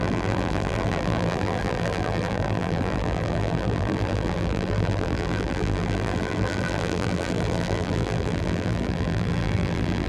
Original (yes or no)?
no